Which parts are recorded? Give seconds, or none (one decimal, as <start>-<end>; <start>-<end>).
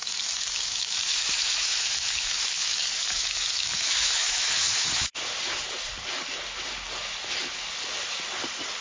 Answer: 5.1-8.8